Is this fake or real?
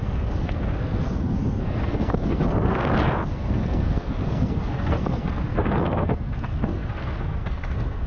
fake